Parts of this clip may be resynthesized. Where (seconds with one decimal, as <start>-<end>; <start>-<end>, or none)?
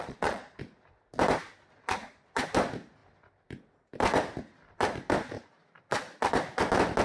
0.0-0.6